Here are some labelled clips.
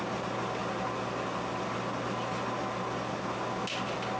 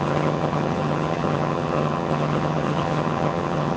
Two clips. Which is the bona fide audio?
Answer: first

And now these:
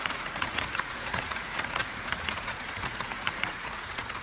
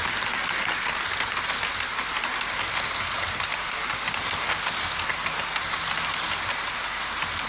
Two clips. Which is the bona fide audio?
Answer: second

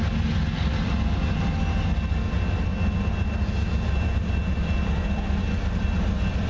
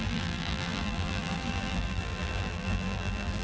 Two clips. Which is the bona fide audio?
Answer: first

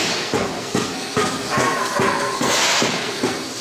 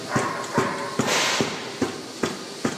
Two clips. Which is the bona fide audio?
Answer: second